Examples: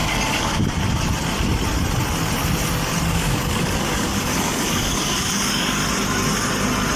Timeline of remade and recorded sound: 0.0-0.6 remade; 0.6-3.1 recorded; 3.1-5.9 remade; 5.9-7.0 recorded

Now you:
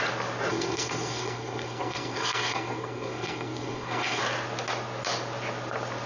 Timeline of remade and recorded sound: 0.0-0.5 recorded; 0.5-4.2 remade; 4.2-6.1 recorded

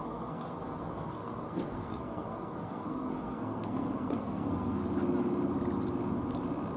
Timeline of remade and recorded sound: 0.0-4.8 remade; 4.8-6.8 recorded

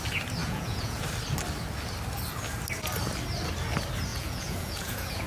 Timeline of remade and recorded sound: 0.0-0.4 recorded; 0.4-1.0 remade; 1.0-4.1 recorded; 4.1-5.3 remade

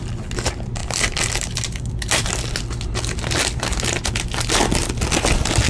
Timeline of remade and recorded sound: 0.0-5.7 recorded

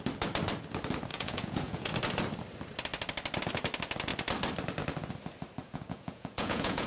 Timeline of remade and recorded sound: 0.0-1.1 recorded; 1.1-1.9 remade; 1.9-5.6 recorded; 5.6-6.9 remade

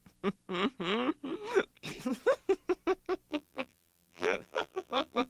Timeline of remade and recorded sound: 0.0-3.3 recorded; 3.3-5.3 remade